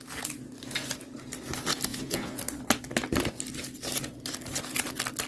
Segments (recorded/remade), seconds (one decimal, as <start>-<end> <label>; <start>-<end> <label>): 0.0-1.9 recorded; 1.9-2.4 remade; 2.4-5.3 recorded